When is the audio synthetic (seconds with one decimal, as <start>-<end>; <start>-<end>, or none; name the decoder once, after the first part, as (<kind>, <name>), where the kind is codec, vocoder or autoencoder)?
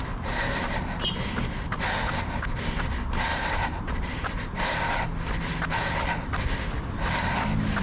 3.3-4.6 (vocoder, BigVGAN v2)